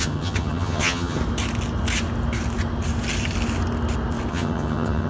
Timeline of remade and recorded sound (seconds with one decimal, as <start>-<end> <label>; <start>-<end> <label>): 0.0-1.2 remade; 1.2-4.3 recorded; 4.3-5.1 remade